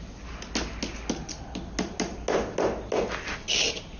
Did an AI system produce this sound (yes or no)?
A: no